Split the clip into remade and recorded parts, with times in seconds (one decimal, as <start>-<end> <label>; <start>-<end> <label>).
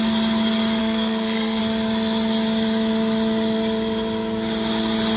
0.0-0.8 recorded; 0.8-1.6 remade; 1.6-5.2 recorded